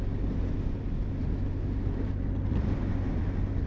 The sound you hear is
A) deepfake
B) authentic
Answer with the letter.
B